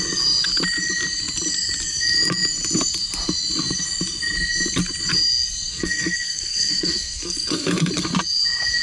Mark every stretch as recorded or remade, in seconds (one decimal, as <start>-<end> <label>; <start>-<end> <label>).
0.0-5.7 recorded; 5.7-7.9 remade; 7.9-8.8 recorded